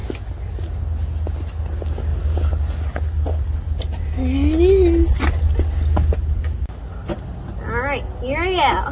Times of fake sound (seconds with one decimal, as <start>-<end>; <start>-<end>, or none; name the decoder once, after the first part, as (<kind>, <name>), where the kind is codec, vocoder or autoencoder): none